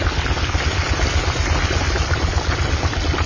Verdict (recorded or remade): recorded